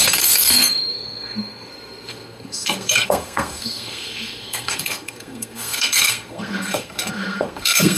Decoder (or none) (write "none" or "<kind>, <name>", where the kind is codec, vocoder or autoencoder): codec, SNAC